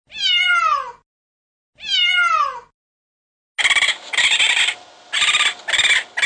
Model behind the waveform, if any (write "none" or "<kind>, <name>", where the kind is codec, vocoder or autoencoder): none